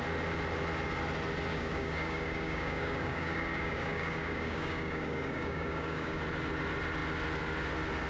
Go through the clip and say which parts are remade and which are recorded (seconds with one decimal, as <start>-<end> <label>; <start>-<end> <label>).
0.0-1.5 recorded; 1.5-6.2 remade; 6.2-8.1 recorded